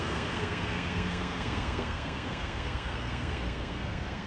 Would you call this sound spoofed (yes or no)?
yes